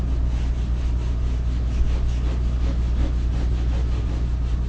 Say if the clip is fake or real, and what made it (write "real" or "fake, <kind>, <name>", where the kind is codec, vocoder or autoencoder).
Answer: real